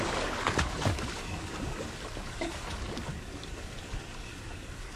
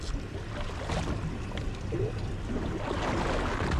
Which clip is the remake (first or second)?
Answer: first